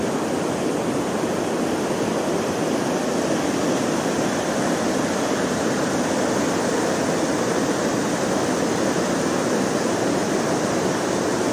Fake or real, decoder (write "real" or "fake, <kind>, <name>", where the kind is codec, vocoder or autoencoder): real